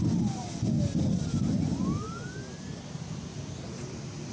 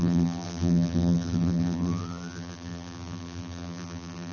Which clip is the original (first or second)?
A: first